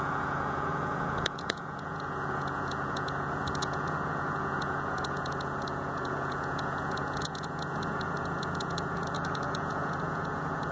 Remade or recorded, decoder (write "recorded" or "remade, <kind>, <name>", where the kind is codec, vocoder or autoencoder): remade, vocoder, Vocos